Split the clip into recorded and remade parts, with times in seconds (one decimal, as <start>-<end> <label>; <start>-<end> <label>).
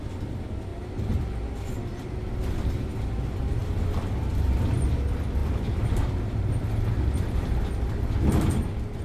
0.0-5.4 recorded; 5.4-6.5 remade; 6.5-9.0 recorded